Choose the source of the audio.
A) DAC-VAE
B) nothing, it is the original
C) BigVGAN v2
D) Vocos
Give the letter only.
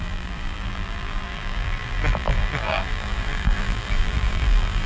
C